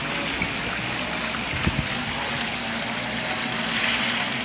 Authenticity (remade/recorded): recorded